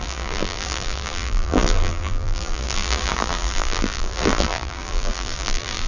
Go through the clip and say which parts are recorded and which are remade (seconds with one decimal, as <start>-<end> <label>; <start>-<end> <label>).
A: 0.0-5.9 remade

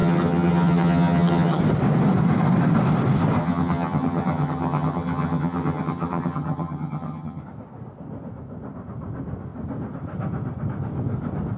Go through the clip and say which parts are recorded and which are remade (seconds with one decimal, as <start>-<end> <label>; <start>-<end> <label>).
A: 0.0-1.6 remade; 1.6-3.4 recorded; 3.4-7.4 remade; 7.4-11.6 recorded

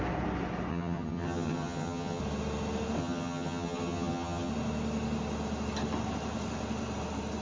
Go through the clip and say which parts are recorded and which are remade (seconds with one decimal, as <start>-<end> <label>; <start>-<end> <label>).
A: 0.0-0.7 recorded; 0.7-2.2 remade; 2.2-3.0 recorded; 3.0-4.5 remade; 4.5-7.4 recorded

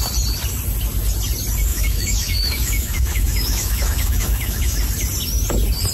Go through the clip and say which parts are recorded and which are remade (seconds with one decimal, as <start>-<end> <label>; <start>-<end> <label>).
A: 0.0-1.7 recorded; 1.7-4.8 remade; 4.8-5.9 recorded

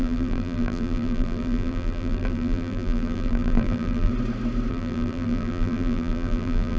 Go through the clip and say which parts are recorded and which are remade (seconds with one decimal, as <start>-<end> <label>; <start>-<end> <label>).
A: 0.0-4.1 remade; 4.1-4.7 recorded; 4.7-6.8 remade

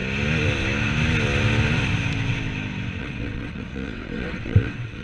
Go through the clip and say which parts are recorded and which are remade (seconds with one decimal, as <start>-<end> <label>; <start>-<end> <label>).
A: 0.0-3.0 recorded; 3.0-5.0 remade

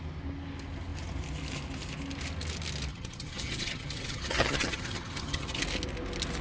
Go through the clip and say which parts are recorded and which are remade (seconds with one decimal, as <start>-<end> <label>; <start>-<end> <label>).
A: 0.0-2.9 recorded; 2.9-5.6 remade; 5.6-6.4 recorded

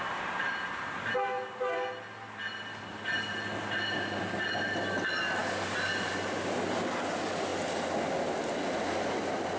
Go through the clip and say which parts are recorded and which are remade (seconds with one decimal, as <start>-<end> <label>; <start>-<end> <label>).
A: 0.0-9.6 recorded